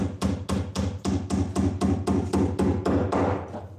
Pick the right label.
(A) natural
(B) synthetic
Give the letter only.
A